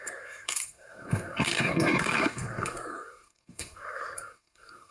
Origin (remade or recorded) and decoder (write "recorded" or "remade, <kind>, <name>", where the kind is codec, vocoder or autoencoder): remade, codec, SNAC